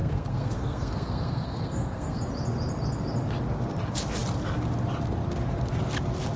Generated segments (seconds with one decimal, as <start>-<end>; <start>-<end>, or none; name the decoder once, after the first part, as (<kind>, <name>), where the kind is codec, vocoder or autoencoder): 0.0-2.2 (codec, SNAC)